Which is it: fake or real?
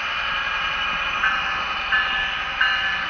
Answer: real